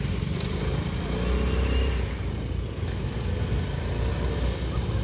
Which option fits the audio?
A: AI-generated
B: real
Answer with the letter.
B